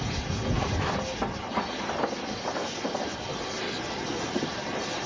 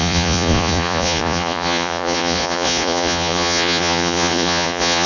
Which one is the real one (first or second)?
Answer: first